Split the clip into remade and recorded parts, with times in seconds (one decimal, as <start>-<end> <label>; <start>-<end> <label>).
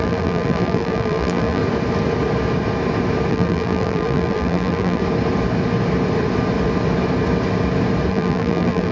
0.0-1.6 remade; 1.6-3.3 recorded; 3.3-5.0 remade; 5.0-8.1 recorded; 8.1-8.9 remade